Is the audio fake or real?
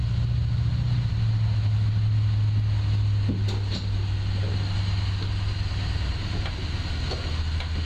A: real